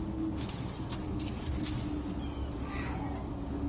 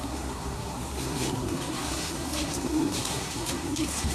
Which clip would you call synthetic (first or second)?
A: second